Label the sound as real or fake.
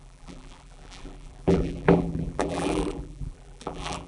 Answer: fake